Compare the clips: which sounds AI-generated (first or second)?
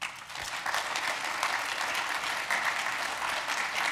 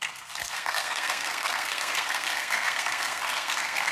second